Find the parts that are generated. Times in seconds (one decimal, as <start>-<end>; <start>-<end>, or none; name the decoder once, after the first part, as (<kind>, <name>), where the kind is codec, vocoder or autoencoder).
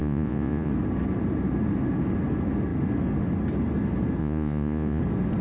0.0-0.7 (vocoder, Vocos); 4.2-5.0